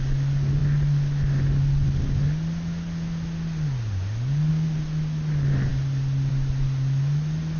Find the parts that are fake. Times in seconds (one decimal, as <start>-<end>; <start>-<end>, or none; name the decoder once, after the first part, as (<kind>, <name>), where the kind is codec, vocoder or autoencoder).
none